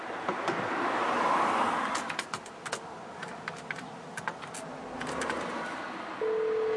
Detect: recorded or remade recorded